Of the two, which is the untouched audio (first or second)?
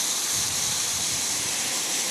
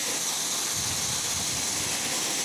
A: second